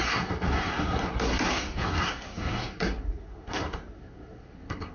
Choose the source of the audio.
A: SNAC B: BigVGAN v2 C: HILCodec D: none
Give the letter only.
A